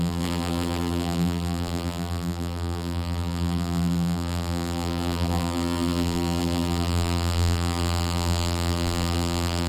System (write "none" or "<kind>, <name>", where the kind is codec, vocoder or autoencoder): vocoder, BigVGAN v2